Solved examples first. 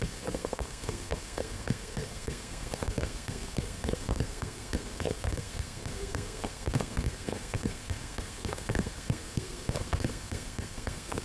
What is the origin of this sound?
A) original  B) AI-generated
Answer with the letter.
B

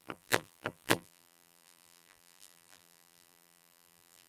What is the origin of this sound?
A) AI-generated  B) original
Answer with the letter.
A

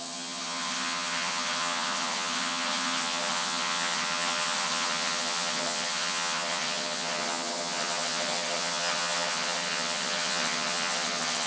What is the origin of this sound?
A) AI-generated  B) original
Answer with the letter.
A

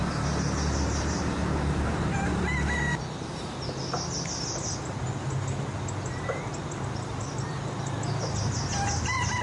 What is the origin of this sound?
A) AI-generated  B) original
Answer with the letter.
B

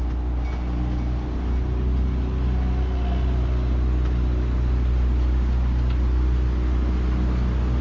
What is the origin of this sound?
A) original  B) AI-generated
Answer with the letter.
A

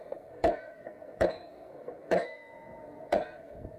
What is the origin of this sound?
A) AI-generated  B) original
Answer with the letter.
A